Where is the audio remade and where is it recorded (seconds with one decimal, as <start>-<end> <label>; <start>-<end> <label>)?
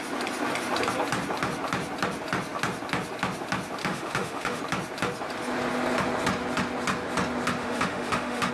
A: 0.0-3.8 recorded; 3.8-4.6 remade; 4.6-7.6 recorded; 7.6-8.5 remade